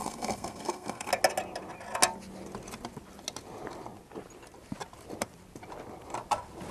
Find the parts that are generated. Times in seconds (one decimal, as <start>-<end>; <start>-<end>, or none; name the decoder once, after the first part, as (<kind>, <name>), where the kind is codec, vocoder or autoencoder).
0.0-1.1 (codec, SNAC)